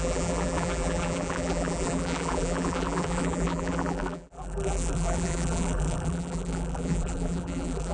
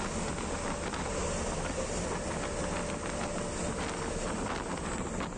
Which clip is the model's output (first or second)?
first